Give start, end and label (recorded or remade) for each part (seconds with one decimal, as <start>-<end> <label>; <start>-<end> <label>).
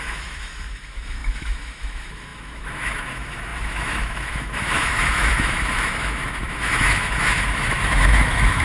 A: 0.0-8.6 remade